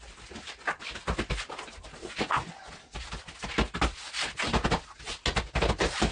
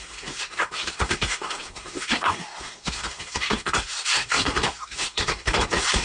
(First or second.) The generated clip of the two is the second